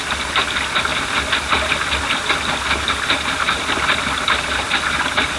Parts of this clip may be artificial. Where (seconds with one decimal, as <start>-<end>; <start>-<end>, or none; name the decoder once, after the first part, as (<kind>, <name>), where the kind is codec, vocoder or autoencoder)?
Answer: none